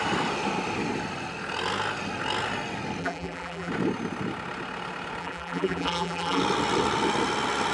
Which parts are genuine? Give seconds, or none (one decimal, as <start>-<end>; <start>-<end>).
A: 0.0-3.0; 3.7-5.2; 6.4-7.7